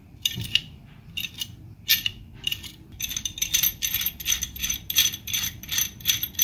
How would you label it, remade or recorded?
remade